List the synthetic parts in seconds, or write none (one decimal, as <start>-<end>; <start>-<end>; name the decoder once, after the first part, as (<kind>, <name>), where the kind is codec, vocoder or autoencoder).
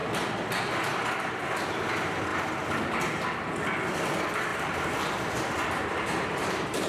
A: 4.5-6.9 (vocoder, BigVGAN v2)